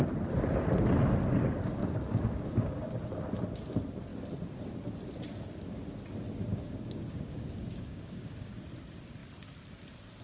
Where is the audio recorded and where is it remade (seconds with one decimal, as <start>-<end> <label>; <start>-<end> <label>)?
0.0-1.8 recorded; 1.8-2.9 remade; 2.9-6.5 recorded; 6.5-8.5 remade; 8.5-10.2 recorded